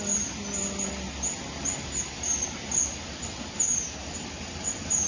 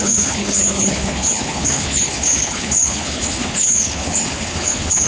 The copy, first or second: second